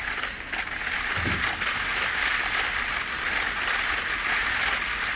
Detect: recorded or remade recorded